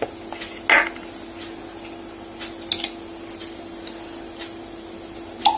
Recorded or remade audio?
recorded